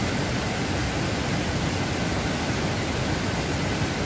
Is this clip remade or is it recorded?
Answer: recorded